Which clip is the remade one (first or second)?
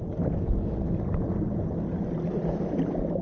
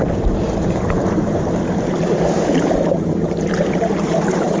second